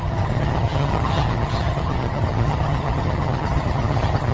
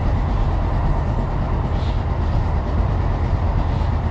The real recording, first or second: second